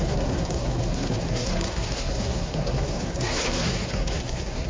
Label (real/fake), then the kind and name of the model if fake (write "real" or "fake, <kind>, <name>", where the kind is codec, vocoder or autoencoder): fake, codec, SNAC